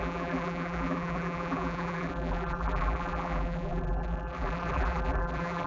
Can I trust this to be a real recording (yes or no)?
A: no